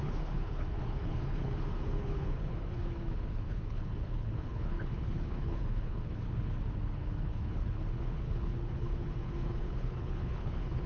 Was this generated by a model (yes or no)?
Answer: yes